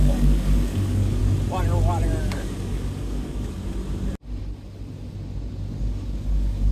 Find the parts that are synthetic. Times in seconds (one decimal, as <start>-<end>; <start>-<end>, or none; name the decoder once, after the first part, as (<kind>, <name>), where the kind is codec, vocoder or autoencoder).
0.0-1.2 (codec, DAC); 2.2-3.6; 5.8-6.7